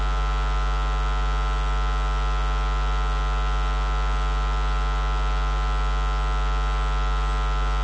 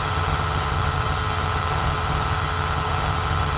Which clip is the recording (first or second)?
first